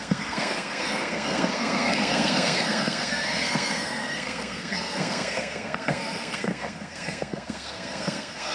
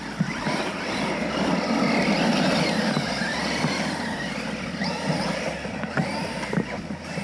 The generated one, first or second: first